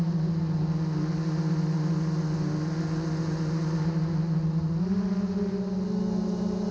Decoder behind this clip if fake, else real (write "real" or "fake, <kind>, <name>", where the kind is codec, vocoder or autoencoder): real